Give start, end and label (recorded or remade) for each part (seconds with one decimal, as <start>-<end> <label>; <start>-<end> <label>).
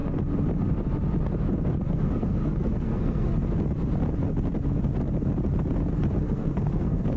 0.0-1.9 recorded; 1.9-3.3 remade; 3.3-6.2 recorded; 6.2-7.2 remade